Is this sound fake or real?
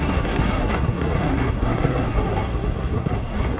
fake